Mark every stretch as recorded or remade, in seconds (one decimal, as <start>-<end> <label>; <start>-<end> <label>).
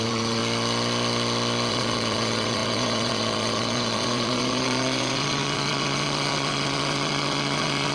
0.0-0.4 remade; 0.4-1.7 recorded; 1.7-7.9 remade